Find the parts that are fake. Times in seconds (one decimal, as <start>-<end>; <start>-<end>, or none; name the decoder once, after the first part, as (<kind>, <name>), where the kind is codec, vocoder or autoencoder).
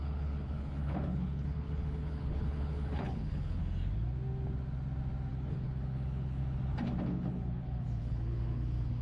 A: 0.0-3.6 (codec, HILCodec); 5.3-6.4; 7.0-9.0